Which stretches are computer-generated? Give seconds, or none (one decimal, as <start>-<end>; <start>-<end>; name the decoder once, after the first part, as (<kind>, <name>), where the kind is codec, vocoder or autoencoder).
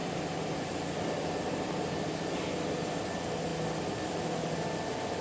none